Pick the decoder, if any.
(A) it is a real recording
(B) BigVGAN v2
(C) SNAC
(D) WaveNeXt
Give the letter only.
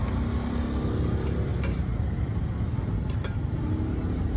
A